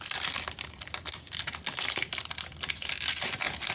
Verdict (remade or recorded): recorded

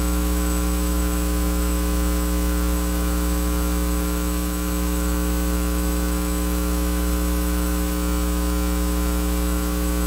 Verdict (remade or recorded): remade